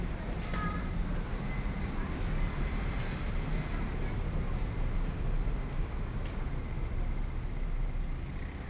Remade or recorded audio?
recorded